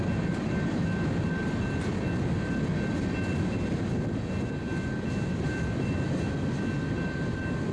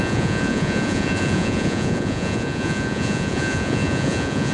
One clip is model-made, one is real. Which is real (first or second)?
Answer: first